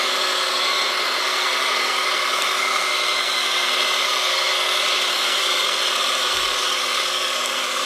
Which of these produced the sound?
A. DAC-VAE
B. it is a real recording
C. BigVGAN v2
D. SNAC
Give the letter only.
D